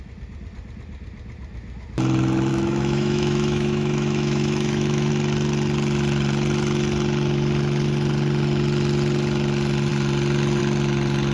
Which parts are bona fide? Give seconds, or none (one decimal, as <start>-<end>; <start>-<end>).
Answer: 0.0-2.5; 5.1-11.3